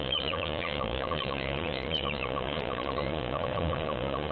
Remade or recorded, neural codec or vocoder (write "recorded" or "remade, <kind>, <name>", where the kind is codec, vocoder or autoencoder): remade, vocoder, Vocos